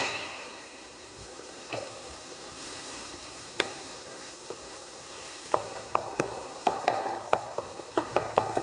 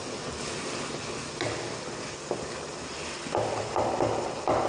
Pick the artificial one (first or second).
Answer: first